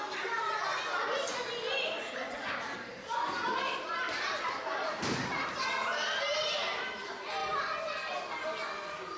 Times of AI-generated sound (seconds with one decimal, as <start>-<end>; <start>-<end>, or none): none